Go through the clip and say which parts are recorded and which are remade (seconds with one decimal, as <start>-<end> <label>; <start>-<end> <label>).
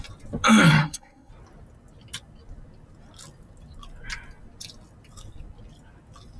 0.0-0.8 recorded; 0.8-1.3 remade; 1.3-6.4 recorded